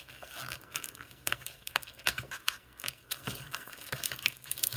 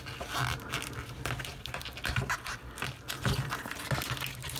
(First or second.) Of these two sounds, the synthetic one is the first